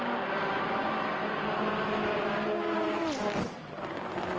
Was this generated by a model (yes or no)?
no